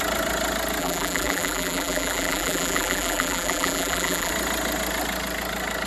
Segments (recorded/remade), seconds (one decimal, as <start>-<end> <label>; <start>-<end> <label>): 0.0-0.8 recorded; 0.8-4.3 remade; 4.3-5.9 recorded